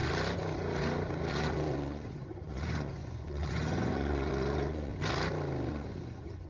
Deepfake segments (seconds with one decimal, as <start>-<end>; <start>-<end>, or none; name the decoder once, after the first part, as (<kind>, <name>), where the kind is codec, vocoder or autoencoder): 1.3-4.9 (vocoder, Vocos); 5.7-6.5